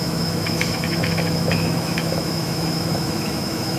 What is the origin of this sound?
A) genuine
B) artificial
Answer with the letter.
B